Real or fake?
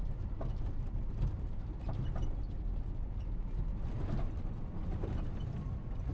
fake